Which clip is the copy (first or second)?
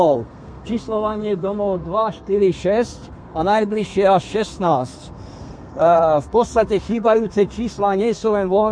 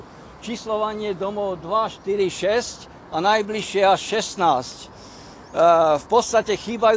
first